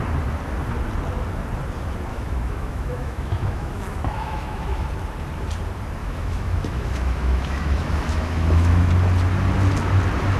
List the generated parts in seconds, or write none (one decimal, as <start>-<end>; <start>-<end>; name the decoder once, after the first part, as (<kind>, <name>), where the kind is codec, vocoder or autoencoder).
2.1-4.9 (autoencoder, DAC-VAE); 6.0-8.9